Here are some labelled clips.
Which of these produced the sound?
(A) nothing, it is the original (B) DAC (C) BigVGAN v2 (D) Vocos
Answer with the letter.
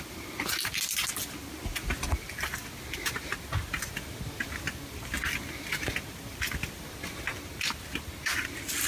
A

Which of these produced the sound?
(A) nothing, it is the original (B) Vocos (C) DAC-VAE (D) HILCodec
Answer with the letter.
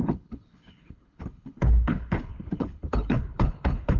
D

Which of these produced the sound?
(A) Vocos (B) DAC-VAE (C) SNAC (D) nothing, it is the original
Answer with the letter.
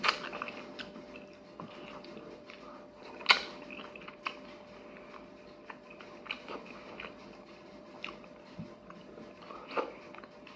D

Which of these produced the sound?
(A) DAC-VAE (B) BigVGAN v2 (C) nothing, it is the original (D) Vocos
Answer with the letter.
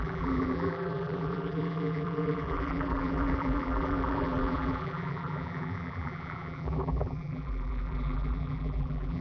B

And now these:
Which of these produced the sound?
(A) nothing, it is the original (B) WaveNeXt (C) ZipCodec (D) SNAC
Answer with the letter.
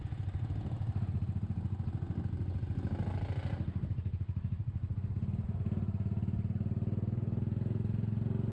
A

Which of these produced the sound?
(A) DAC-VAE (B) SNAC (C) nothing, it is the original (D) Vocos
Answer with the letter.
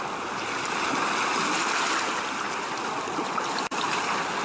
C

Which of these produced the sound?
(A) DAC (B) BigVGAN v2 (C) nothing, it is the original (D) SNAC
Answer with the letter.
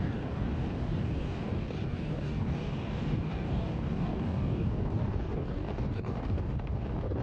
A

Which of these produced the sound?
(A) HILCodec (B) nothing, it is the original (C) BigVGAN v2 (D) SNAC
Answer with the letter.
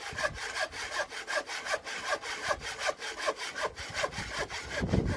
B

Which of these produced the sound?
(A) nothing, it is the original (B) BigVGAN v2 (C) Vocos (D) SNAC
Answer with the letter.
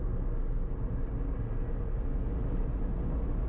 A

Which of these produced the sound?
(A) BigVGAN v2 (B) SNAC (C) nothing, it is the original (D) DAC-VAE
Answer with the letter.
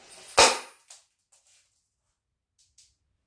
C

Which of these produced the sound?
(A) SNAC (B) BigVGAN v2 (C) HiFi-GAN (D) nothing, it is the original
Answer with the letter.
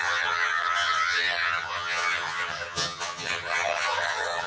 C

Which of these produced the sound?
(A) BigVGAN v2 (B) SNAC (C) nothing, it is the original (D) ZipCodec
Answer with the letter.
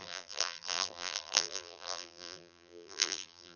A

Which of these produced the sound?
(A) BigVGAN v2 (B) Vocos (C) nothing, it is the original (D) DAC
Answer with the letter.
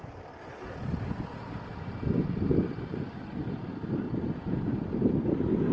C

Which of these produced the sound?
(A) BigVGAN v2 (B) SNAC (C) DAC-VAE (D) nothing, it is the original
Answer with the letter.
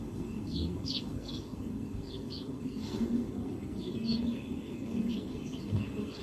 B